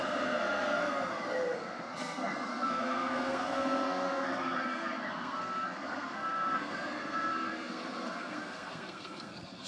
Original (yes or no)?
no